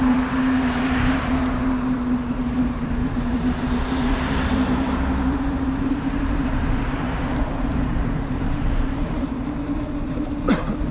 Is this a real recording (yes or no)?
no